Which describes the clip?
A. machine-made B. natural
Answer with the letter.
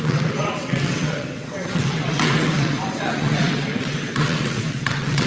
A